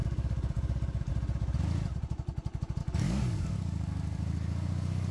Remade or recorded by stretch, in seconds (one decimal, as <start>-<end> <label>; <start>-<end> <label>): 0.0-1.1 remade; 1.1-2.8 recorded; 2.8-5.1 remade